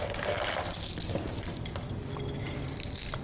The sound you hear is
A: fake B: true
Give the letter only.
B